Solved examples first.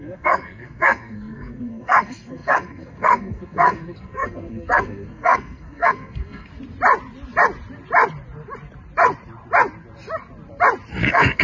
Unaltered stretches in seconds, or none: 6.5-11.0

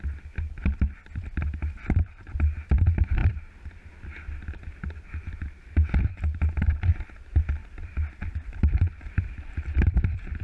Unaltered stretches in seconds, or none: 0.0-3.2; 3.9-7.6; 10.0-10.4

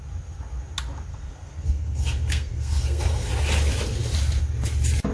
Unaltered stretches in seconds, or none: 0.0-1.1; 3.3-5.1